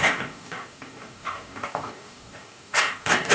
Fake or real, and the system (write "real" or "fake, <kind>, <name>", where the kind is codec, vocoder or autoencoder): fake, codec, DAC